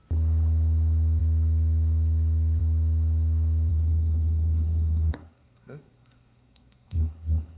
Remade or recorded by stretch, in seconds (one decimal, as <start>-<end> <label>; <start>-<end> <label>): 0.0-3.7 recorded; 3.7-7.6 remade